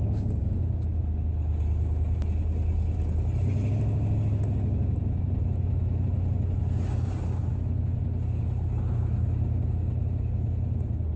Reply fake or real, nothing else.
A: real